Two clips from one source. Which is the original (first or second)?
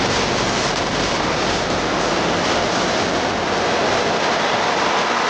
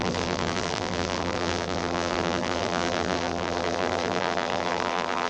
first